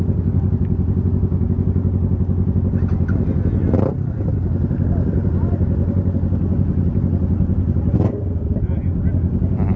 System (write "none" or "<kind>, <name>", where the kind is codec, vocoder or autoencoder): none